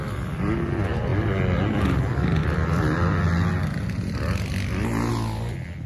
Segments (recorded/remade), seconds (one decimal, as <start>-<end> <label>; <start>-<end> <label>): 0.0-5.9 recorded